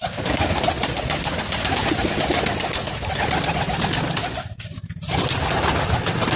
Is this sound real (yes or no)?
yes